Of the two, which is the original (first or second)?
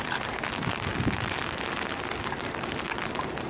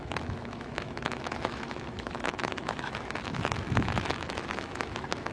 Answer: first